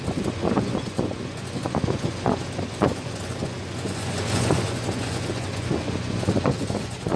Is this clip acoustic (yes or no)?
no